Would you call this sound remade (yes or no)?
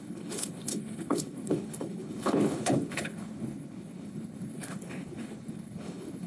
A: yes